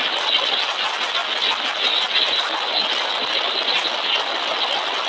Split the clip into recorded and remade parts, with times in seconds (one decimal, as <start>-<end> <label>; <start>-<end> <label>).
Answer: 0.0-5.1 recorded